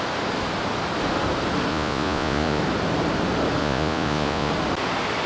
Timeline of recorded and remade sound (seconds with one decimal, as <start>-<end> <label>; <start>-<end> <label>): 0.0-1.7 recorded; 1.7-2.6 remade; 2.6-3.6 recorded; 3.6-4.5 remade; 4.5-5.3 recorded